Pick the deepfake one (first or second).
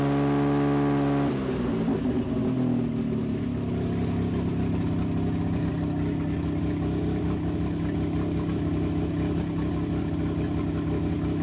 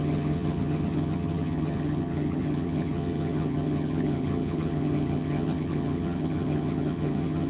second